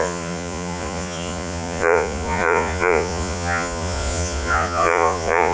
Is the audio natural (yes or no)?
no